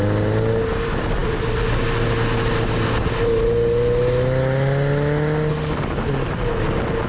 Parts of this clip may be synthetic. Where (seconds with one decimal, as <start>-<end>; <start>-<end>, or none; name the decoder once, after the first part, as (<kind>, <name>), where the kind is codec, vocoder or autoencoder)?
none